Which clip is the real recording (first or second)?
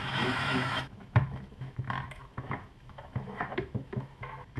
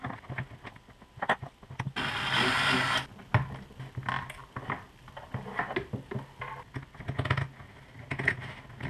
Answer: second